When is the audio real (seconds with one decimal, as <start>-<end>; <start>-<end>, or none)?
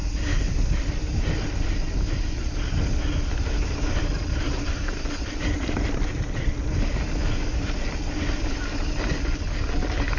0.0-10.2